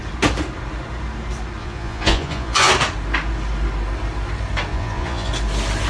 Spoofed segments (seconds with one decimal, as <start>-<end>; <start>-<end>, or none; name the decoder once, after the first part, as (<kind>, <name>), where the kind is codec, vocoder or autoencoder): 1.6-2.7 (vocoder, Vocos); 4.7-5.3